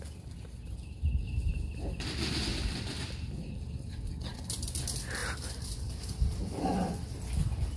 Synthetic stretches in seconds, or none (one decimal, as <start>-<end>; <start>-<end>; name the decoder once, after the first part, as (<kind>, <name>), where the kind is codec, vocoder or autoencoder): 2.5-3.6 (vocoder, BigVGAN v2); 4.3-4.8